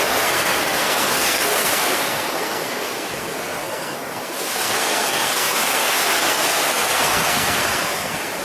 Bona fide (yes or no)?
no